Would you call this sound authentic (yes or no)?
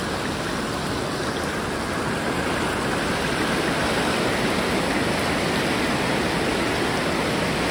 yes